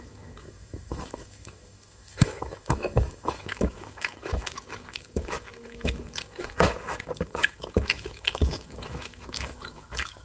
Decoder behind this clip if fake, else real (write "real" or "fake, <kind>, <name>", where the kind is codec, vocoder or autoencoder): fake, autoencoder, DAC-VAE